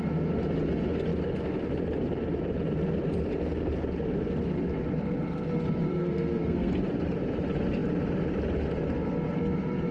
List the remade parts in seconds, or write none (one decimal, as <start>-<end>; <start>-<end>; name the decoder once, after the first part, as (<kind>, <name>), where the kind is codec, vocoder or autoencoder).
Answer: 5.9-6.7 (codec, SNAC)